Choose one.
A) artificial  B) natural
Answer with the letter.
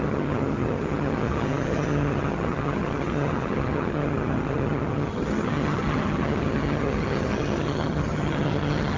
A